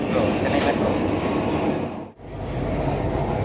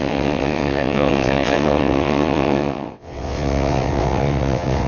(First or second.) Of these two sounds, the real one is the first